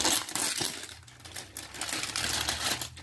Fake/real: real